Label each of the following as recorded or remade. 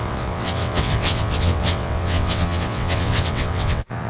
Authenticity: remade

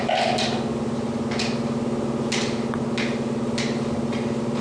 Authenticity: recorded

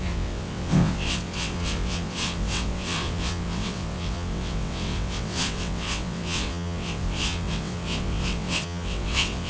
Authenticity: remade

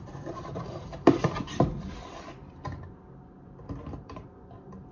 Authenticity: recorded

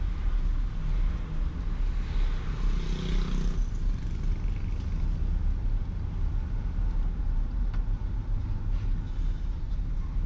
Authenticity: recorded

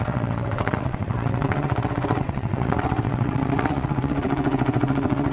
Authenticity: remade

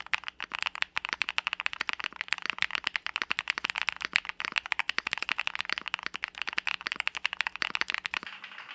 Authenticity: recorded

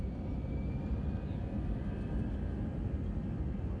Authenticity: recorded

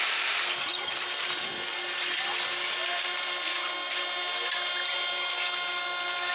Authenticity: recorded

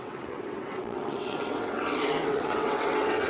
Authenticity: remade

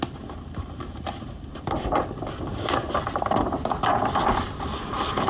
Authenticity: recorded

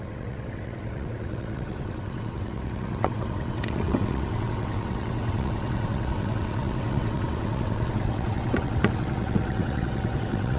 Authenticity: remade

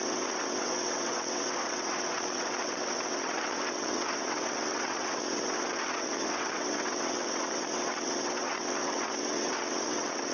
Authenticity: remade